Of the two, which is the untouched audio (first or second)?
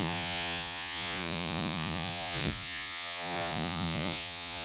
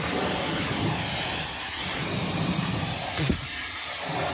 second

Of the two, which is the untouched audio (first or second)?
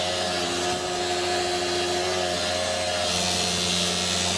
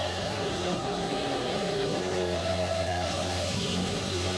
first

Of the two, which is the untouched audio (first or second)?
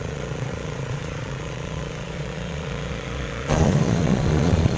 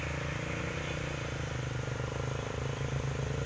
second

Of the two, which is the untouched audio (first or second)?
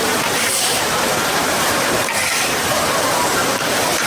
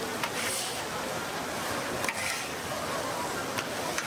second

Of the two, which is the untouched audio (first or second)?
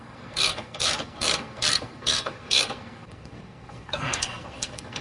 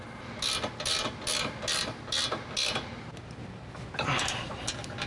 second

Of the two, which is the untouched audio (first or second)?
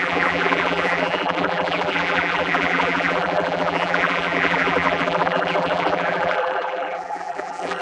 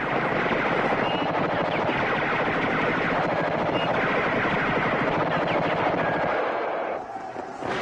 second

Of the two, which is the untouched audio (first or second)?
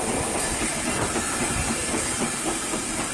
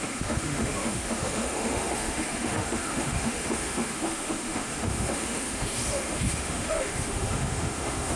first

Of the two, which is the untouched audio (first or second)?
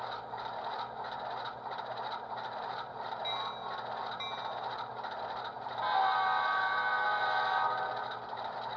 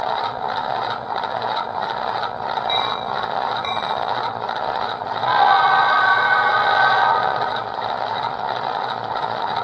first